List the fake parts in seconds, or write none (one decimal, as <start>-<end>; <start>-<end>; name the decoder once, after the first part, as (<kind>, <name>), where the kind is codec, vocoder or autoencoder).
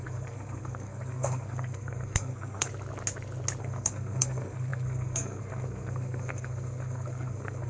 0.0-2.7 (codec, SNAC); 3.6-7.7